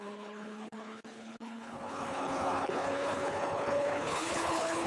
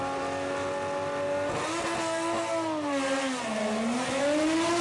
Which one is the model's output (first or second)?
first